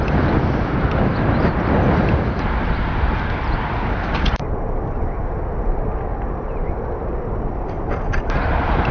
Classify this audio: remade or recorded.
recorded